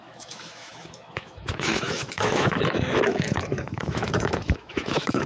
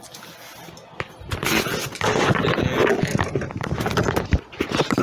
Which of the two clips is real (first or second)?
second